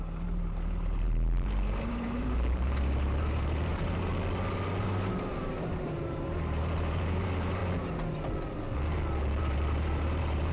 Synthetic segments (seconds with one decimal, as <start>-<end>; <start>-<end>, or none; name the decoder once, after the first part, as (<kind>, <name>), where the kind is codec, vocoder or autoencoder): 0.0-4.1 (vocoder, BigVGAN v2); 4.8-7.6; 9.4-10.5